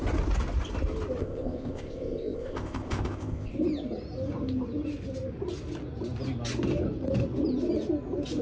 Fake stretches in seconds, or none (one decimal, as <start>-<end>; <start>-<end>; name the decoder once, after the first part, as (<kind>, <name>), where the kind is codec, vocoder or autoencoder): 1.2-3.5 (codec, ZipCodec)